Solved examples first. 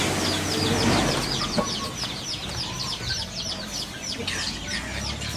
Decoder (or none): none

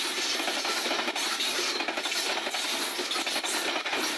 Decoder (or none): none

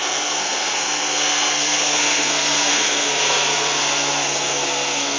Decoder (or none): codec, SNAC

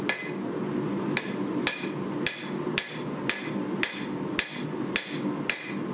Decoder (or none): none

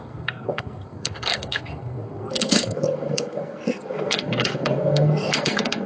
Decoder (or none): codec, SNAC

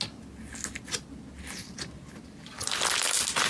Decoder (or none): none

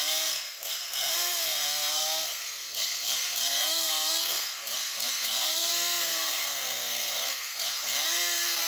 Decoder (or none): codec, SNAC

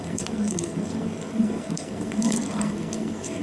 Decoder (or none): codec, SNAC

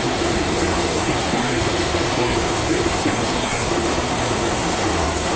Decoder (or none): codec, SNAC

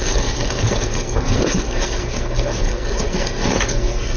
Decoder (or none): codec, SNAC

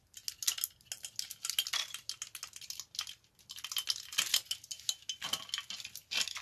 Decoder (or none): none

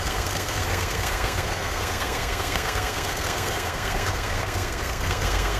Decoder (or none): codec, SNAC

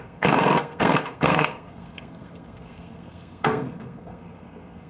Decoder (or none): codec, SNAC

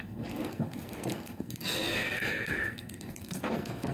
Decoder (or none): codec, SNAC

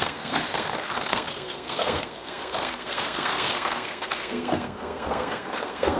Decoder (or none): codec, SNAC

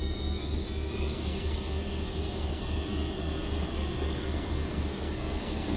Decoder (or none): codec, SNAC